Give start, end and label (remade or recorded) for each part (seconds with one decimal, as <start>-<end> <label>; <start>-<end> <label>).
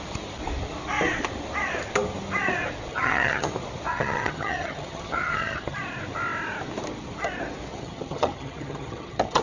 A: 0.0-2.9 recorded; 2.9-3.5 remade; 3.5-3.9 recorded; 3.9-5.8 remade; 5.8-7.7 recorded; 7.7-9.4 remade